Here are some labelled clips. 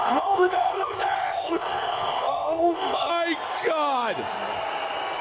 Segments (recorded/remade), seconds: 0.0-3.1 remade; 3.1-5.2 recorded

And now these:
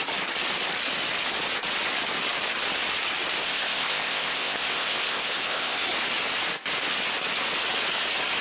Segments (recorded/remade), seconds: 0.0-3.4 recorded; 3.4-5.8 remade; 5.8-8.4 recorded

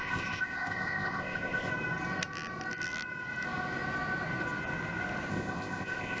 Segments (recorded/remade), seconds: 0.0-1.7 remade; 1.7-5.3 recorded; 5.3-6.2 remade